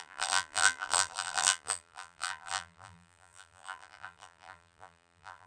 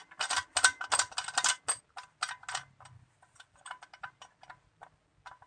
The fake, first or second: first